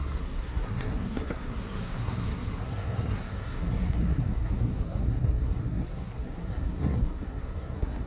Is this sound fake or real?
fake